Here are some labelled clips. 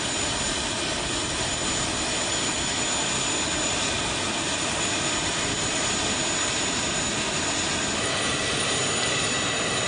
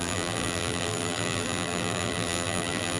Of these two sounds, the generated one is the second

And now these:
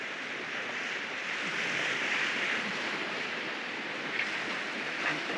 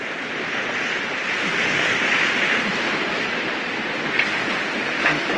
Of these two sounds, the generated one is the first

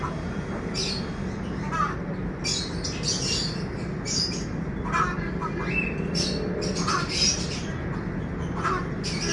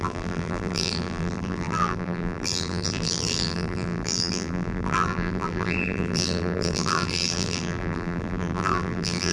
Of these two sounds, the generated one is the second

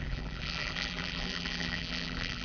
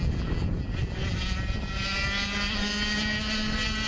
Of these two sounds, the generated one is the first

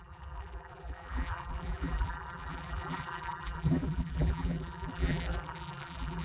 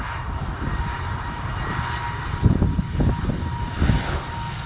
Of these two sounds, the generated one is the first